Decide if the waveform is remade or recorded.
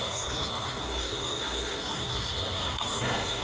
remade